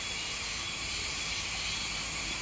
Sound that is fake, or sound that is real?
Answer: fake